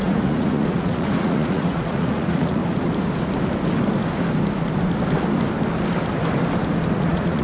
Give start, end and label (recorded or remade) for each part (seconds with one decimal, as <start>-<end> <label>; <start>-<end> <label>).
0.0-2.6 remade; 2.6-7.0 recorded; 7.0-7.4 remade